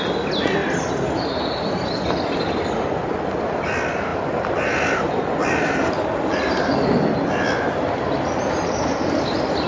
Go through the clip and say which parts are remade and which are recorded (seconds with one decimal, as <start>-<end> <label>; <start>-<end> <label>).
0.0-9.7 recorded